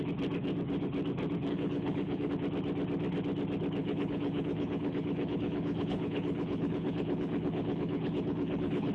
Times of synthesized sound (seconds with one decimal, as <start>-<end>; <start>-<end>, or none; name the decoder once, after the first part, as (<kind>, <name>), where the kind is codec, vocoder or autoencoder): 1.5-2.3 (codec, HILCodec); 3.8-8.9